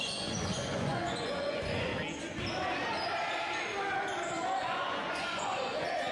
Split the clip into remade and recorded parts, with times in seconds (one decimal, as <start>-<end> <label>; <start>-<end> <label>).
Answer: 0.0-1.9 remade; 1.9-4.6 recorded; 4.6-6.1 remade